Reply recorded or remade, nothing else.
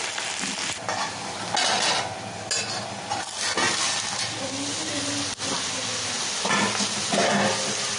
recorded